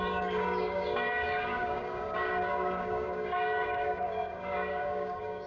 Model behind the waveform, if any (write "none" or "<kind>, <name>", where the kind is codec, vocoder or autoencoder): codec, DAC